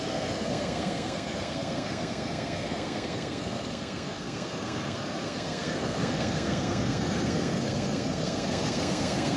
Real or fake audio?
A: fake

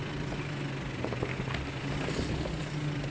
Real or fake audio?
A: real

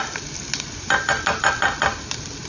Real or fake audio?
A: real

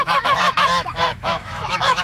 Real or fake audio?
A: fake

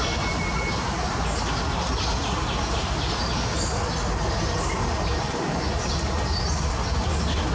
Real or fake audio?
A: real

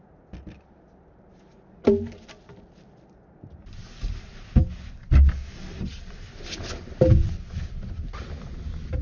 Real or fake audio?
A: real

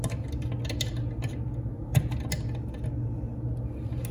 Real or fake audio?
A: real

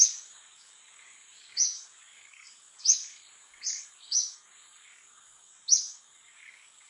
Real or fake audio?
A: fake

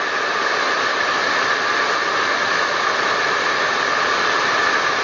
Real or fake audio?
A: real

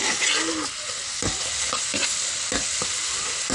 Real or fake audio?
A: real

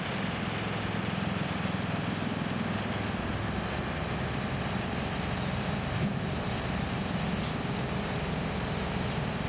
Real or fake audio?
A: real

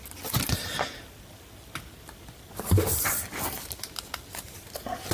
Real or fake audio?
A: real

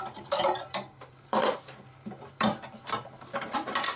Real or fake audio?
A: fake